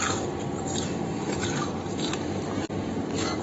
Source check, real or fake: real